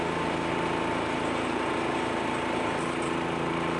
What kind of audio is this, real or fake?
real